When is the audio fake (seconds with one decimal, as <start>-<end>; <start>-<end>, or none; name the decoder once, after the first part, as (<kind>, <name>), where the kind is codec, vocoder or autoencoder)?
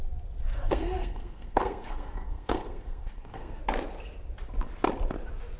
0.5-3.6 (codec, SNAC)